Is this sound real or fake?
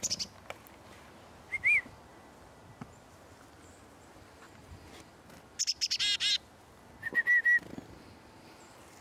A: real